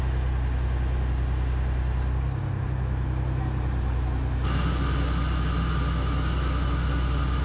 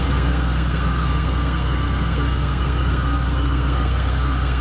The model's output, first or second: second